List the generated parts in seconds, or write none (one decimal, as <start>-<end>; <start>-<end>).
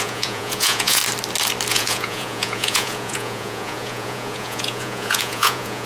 0.0-1.0; 1.7-5.9